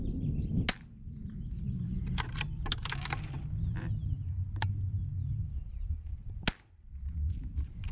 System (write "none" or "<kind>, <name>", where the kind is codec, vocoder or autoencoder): none